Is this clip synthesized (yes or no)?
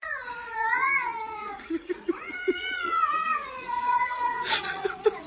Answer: yes